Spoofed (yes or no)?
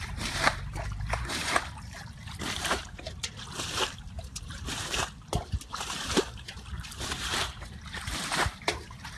yes